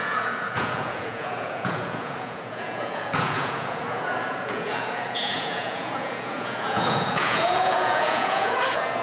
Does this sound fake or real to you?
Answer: fake